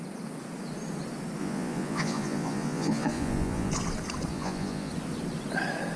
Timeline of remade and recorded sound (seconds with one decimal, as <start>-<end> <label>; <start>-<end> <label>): 0.0-1.4 recorded; 1.4-3.7 remade; 3.7-4.3 recorded; 4.3-4.9 remade; 4.9-6.0 recorded